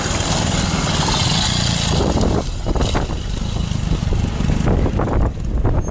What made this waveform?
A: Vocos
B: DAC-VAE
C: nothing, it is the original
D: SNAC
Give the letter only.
C